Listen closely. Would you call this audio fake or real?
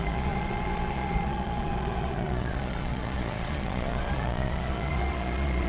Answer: fake